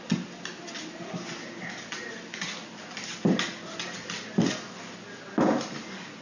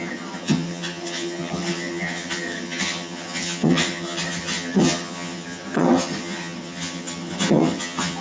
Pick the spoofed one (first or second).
second